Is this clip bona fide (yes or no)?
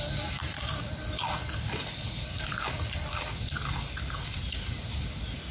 yes